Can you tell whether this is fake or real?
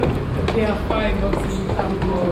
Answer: real